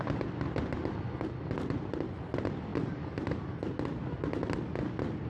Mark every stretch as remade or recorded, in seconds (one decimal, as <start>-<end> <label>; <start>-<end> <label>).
0.0-2.7 recorded; 2.7-3.4 remade; 3.4-5.3 recorded

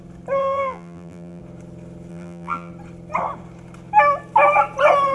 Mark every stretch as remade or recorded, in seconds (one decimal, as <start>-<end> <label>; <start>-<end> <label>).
0.0-0.4 recorded; 0.4-1.4 remade; 1.4-2.1 recorded; 2.1-2.7 remade; 2.7-5.1 recorded

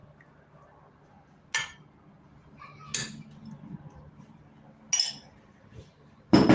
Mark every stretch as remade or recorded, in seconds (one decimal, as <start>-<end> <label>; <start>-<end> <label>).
0.0-2.1 recorded; 2.1-2.7 remade; 2.7-5.1 recorded; 5.1-6.5 remade

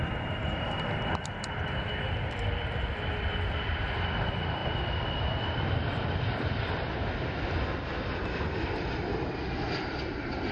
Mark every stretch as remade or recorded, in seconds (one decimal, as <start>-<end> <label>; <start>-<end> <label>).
0.0-4.6 remade; 4.6-5.6 recorded; 5.6-10.5 remade

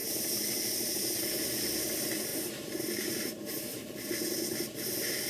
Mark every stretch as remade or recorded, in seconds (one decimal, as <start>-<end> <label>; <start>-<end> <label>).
0.0-1.1 remade; 1.1-2.3 recorded; 2.3-3.8 remade; 3.8-5.3 recorded